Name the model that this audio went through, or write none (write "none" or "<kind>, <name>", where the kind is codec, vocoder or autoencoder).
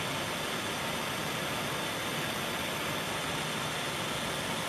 none